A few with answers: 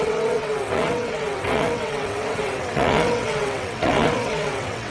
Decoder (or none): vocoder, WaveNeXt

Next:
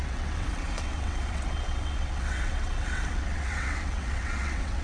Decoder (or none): vocoder, WaveNeXt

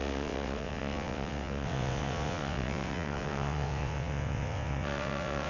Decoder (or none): vocoder, WaveNeXt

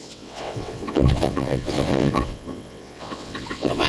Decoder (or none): vocoder, WaveNeXt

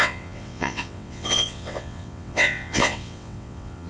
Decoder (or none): vocoder, WaveNeXt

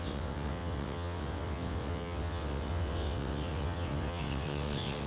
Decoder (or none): vocoder, WaveNeXt